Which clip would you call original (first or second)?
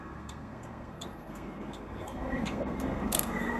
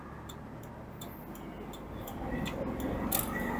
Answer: second